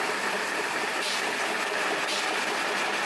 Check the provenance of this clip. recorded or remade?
recorded